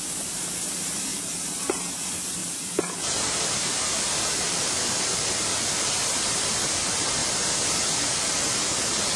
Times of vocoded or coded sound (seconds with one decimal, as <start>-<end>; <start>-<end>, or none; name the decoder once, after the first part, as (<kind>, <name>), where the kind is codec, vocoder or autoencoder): 0.0-7.2 (vocoder, BigVGAN v2); 7.8-9.2

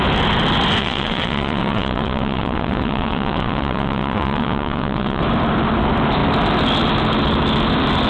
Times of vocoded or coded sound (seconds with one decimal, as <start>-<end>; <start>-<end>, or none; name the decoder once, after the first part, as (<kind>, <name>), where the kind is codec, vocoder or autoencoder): 0.8-5.2 (vocoder, WaveNeXt)

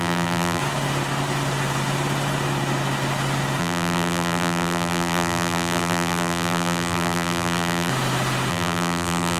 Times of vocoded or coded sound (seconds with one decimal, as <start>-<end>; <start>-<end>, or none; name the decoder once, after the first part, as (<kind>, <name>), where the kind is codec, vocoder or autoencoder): 0.0-0.6 (vocoder, BigVGAN v2); 3.6-7.9; 8.5-9.4